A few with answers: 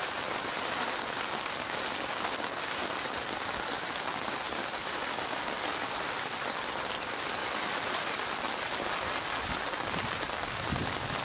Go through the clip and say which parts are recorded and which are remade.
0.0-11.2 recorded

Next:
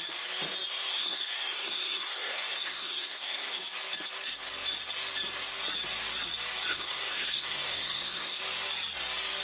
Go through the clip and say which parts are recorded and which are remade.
0.0-0.9 recorded; 0.9-3.6 remade; 3.6-6.7 recorded; 6.7-8.4 remade; 8.4-9.4 recorded

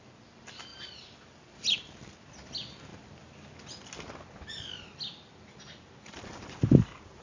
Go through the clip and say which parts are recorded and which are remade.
0.0-7.2 recorded

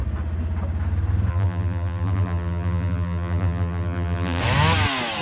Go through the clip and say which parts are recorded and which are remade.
0.0-1.3 recorded; 1.3-4.4 remade; 4.4-5.2 recorded

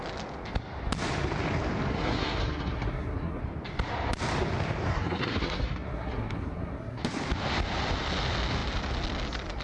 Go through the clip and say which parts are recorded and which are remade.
0.0-1.9 recorded; 1.9-3.4 remade; 3.4-4.9 recorded; 4.9-7.0 remade; 7.0-9.6 recorded

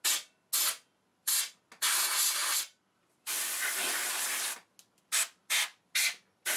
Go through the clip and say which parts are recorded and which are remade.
0.0-6.6 recorded

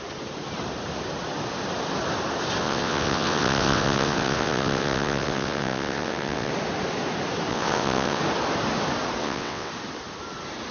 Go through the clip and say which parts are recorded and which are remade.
0.0-2.6 recorded; 2.6-6.5 remade; 6.5-7.5 recorded; 7.5-8.2 remade; 8.2-9.2 recorded; 9.2-9.7 remade; 9.7-10.7 recorded

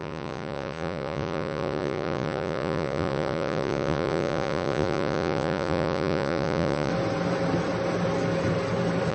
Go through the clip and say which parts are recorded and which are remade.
0.0-6.9 remade; 6.9-9.1 recorded